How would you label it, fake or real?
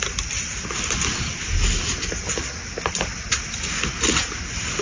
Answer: real